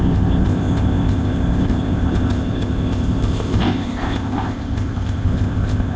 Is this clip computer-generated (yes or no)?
yes